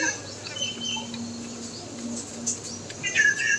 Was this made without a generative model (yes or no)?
yes